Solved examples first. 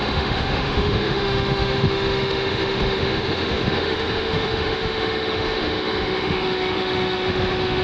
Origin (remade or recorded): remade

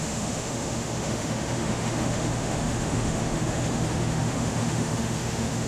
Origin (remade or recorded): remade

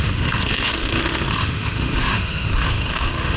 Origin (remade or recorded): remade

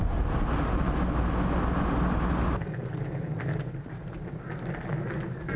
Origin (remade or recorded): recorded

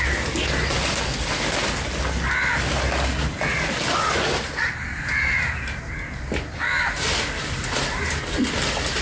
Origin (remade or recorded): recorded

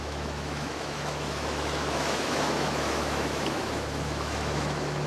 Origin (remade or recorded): remade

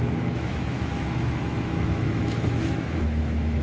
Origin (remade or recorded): remade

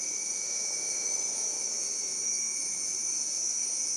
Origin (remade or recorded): remade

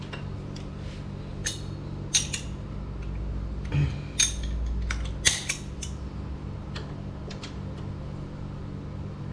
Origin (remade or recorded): recorded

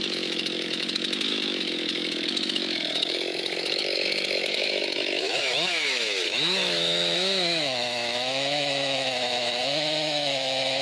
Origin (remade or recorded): remade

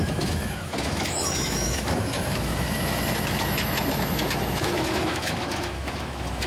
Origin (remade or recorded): remade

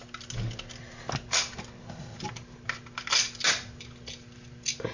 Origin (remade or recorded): recorded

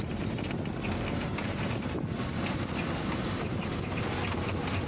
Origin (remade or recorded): recorded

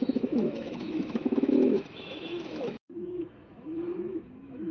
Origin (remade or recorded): remade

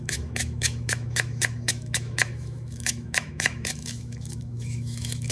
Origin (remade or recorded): remade